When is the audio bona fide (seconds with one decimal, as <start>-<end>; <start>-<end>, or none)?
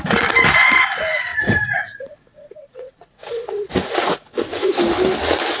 0.0-1.3; 4.7-5.6